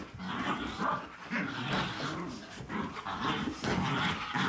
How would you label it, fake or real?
real